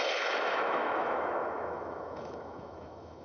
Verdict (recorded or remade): remade